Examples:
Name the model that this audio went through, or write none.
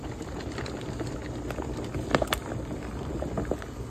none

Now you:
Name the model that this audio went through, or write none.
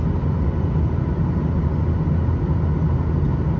none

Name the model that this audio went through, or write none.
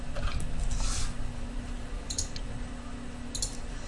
none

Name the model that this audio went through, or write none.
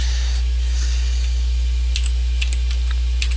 none